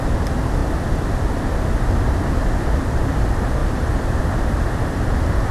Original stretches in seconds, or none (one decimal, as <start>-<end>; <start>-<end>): 0.0-5.5